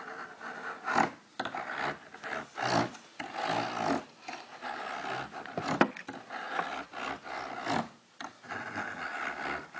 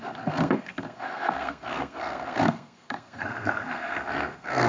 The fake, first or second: second